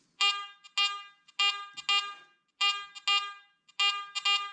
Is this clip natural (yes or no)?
yes